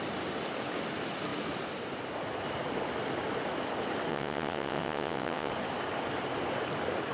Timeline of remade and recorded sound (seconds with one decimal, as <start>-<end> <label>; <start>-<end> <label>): 0.0-4.1 recorded; 4.1-5.5 remade; 5.5-7.1 recorded